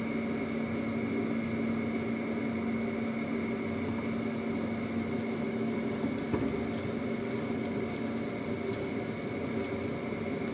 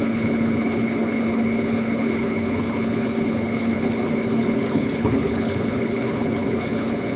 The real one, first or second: first